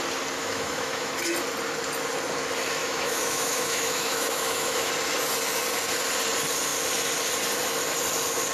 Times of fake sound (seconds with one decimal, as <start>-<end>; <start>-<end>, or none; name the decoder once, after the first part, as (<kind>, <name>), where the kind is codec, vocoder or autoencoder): 0.4-1.1 (autoencoder, DAC-VAE); 2.8-4.9